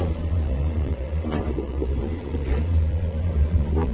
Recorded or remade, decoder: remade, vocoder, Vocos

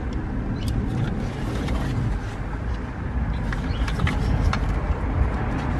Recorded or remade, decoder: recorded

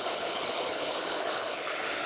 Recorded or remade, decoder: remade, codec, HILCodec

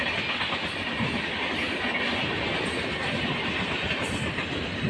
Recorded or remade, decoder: recorded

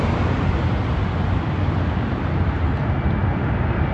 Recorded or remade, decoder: recorded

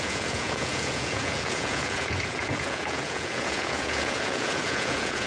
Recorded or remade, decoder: remade, vocoder, Vocos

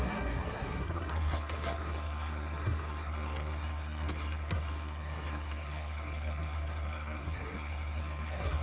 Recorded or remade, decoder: remade, codec, SNAC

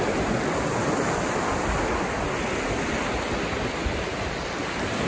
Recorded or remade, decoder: recorded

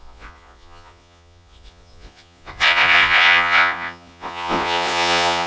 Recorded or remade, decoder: remade, vocoder, Vocos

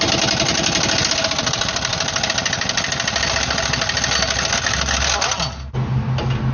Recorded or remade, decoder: recorded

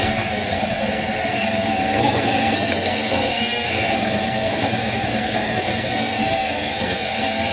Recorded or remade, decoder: remade, codec, SNAC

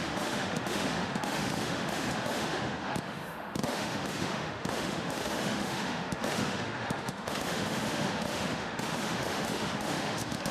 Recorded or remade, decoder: remade, autoencoder, DAC-VAE